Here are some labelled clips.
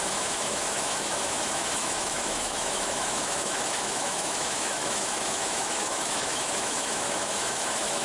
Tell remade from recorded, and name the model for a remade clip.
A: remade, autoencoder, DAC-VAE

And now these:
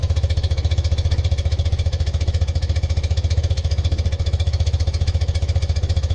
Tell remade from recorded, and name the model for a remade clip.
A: remade, autoencoder, DAC-VAE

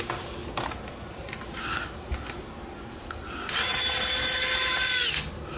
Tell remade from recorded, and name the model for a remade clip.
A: recorded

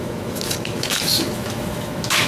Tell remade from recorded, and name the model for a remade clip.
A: remade, autoencoder, DAC-VAE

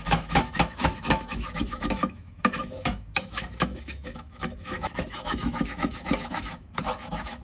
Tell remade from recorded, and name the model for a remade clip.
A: remade, autoencoder, DAC-VAE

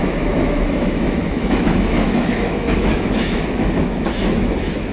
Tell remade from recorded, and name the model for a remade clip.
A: remade, autoencoder, DAC-VAE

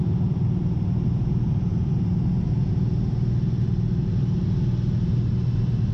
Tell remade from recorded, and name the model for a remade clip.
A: recorded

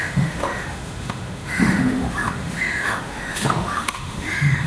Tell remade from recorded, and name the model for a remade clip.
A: remade, autoencoder, DAC-VAE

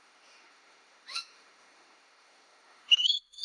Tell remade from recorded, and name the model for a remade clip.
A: remade, autoencoder, DAC-VAE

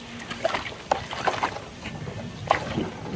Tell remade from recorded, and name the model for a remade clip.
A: recorded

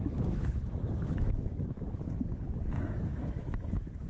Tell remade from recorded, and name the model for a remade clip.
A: remade, autoencoder, DAC-VAE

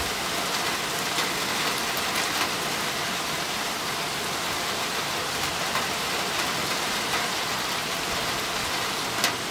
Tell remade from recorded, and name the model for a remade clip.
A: recorded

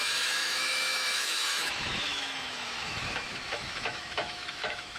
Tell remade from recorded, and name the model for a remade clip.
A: remade, autoencoder, DAC-VAE